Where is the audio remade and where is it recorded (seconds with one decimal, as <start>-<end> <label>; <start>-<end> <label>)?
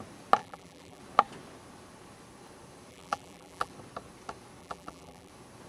0.0-0.4 recorded; 0.4-1.0 remade; 1.0-2.9 recorded; 2.9-3.7 remade; 3.7-4.6 recorded; 4.6-5.3 remade; 5.3-5.7 recorded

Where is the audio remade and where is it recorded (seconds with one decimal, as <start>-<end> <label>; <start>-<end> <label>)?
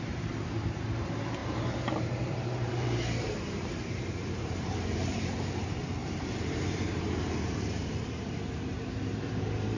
0.0-9.8 remade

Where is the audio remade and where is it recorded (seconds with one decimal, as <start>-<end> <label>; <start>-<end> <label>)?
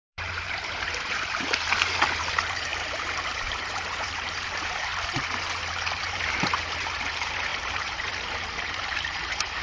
0.0-4.9 remade; 4.9-5.4 recorded; 5.4-9.6 remade